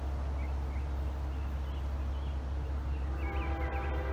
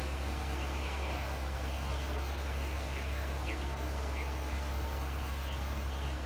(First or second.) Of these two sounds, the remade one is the second